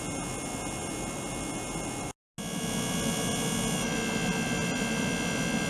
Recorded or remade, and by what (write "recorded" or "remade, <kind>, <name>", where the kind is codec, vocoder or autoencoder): recorded